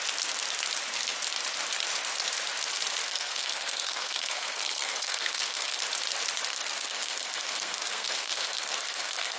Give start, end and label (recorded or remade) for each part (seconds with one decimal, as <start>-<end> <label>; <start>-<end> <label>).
0.0-3.0 recorded; 3.0-5.8 remade; 5.8-6.5 recorded; 6.5-9.4 remade